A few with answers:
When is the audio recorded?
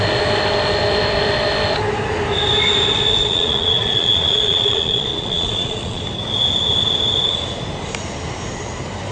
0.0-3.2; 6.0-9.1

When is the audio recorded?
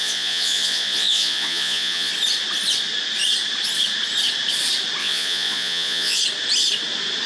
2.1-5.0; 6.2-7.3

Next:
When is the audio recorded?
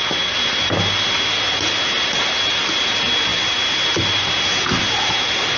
0.0-5.6